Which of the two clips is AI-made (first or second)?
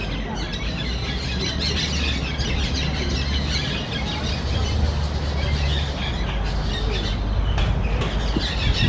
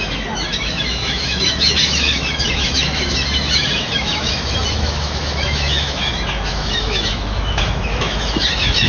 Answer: second